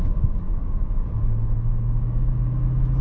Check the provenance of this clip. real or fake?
fake